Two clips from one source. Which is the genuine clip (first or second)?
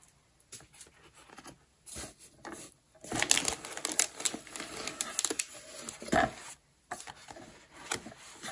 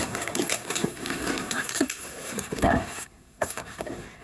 first